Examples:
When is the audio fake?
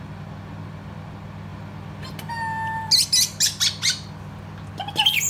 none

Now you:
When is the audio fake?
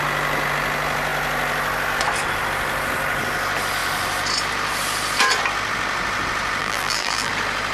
6.6-7.3 (vocoder, BigVGAN v2)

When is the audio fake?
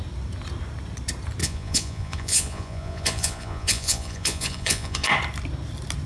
1.4-5.1 (vocoder, Vocos)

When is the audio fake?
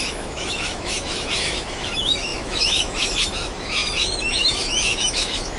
0.0-5.6 (autoencoder, DAC-VAE)